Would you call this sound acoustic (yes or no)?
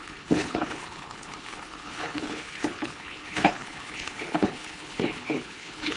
no